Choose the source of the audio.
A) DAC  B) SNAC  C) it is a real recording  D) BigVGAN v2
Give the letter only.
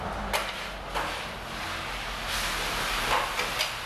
C